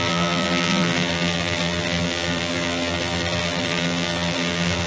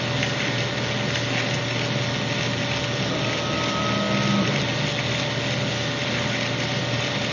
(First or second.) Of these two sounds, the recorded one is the second